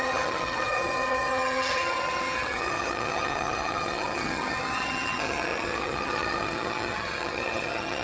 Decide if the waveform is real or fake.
fake